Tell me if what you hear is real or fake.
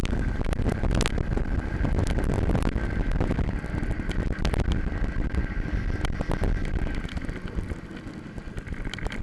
real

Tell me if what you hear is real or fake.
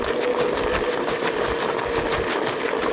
real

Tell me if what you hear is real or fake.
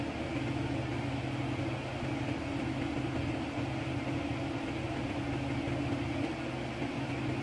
real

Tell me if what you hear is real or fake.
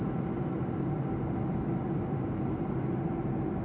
real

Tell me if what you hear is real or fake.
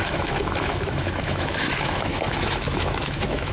fake